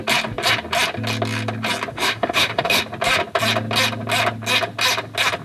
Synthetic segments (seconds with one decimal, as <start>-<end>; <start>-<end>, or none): 1.9-2.8